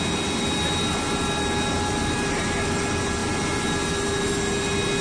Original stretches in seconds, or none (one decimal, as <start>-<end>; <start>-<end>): 0.0-5.0